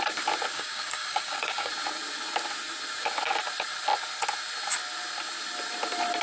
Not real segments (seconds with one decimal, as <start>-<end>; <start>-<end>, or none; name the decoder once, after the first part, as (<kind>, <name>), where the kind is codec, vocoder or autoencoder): 0.5-1.7 (codec, DAC)